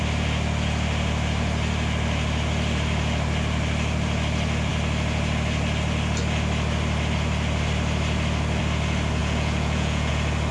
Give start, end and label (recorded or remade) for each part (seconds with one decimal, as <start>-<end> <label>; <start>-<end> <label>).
0.0-9.2 recorded; 9.2-10.1 remade; 10.1-10.5 recorded